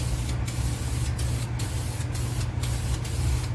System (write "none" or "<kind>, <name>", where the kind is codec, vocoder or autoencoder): none